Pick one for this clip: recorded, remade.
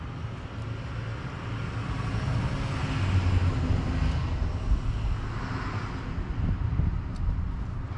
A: recorded